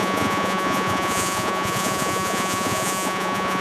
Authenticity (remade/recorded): remade